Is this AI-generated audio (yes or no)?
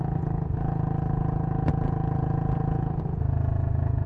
yes